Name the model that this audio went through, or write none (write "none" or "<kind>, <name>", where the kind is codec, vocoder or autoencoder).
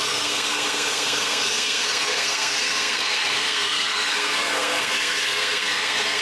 codec, SNAC